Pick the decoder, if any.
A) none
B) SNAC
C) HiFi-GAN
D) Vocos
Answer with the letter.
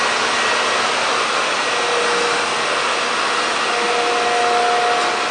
A